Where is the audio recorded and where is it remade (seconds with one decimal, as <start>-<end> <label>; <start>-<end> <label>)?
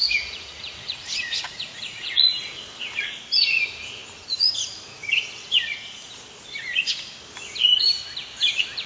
0.0-2.6 remade; 2.6-8.9 recorded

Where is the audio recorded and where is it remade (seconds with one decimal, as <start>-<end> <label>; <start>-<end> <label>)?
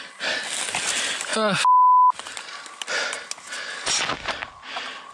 0.0-5.1 recorded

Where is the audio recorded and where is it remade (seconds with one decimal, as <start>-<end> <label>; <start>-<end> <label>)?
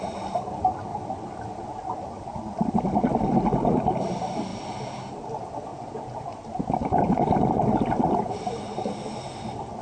0.0-5.7 recorded; 5.7-6.3 remade; 6.3-9.8 recorded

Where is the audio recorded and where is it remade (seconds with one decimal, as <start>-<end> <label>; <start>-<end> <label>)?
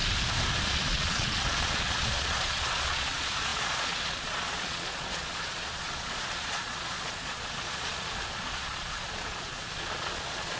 0.0-0.6 recorded; 0.6-10.6 remade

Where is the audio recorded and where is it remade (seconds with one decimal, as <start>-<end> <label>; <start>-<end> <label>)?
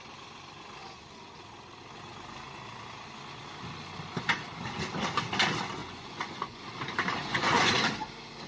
0.0-5.8 recorded; 5.8-6.6 remade; 6.6-7.2 recorded; 7.2-7.7 remade; 7.7-8.5 recorded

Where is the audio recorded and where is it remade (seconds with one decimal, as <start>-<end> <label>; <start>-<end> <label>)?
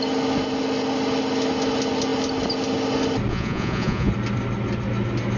0.0-3.3 recorded; 3.3-4.1 remade; 4.1-5.4 recorded